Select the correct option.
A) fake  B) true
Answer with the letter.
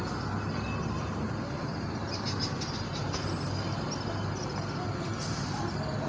B